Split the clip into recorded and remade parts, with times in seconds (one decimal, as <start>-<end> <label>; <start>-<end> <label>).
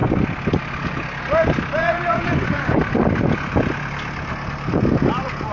0.0-1.8 recorded; 1.8-2.8 remade; 2.8-5.5 recorded